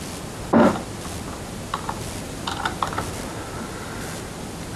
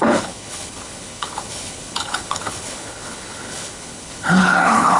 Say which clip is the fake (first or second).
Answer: second